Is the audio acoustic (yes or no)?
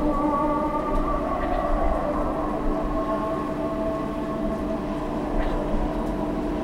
yes